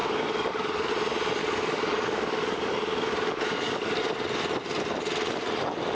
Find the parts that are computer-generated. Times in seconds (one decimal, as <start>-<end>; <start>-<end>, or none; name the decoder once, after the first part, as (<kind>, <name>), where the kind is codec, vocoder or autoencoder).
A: 0.0-0.9 (codec, DAC); 1.4-4.0